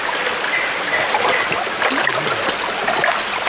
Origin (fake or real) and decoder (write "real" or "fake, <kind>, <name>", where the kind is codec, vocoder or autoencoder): real